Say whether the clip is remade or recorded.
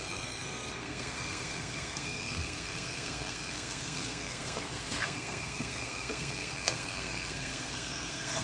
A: remade